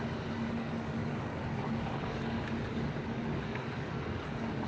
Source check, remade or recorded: remade